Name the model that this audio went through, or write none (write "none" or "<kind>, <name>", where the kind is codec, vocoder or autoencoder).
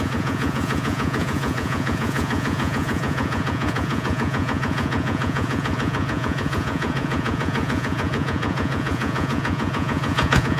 vocoder, Vocos